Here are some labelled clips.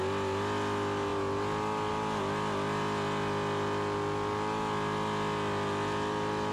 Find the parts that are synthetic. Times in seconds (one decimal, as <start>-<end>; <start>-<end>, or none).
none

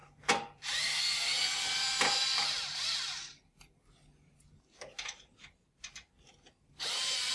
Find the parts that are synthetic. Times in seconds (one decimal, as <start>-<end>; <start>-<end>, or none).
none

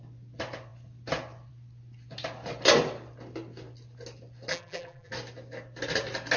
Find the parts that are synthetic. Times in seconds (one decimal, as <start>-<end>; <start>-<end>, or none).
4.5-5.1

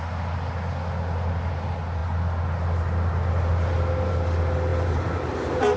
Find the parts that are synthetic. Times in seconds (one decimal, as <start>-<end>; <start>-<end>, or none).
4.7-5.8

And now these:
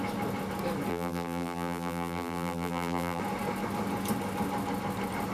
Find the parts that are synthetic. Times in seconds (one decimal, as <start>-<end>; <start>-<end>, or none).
0.9-3.2

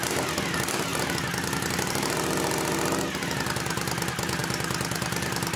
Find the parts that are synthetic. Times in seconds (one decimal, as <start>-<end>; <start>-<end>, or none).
none

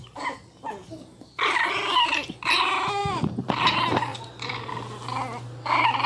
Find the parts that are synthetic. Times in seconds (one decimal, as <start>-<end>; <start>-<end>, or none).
0.8-2.1; 3.0-3.6; 4.1-4.7

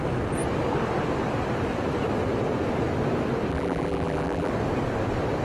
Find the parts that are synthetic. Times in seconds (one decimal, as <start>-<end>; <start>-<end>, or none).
3.5-4.5